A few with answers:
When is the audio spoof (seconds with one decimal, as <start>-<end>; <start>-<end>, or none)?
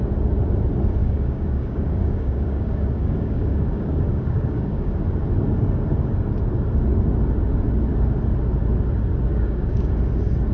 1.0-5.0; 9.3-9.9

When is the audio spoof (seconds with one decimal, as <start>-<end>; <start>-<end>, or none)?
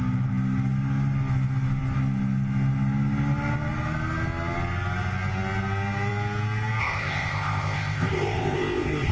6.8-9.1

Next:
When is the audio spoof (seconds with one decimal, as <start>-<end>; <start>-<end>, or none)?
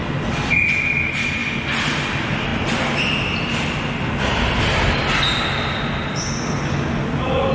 none